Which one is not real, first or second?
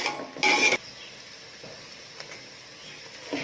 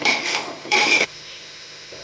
second